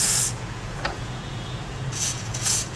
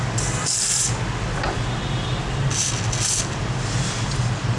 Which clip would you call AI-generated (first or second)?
first